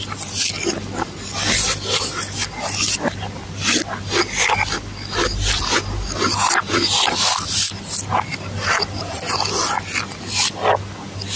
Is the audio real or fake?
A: real